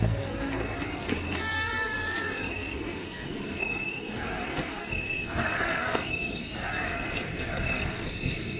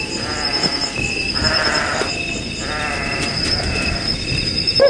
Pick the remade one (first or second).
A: first